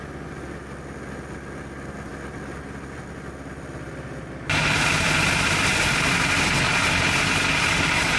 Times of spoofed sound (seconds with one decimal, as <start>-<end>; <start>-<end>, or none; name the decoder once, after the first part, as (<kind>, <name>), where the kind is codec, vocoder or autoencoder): none